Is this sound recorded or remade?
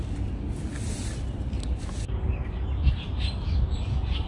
recorded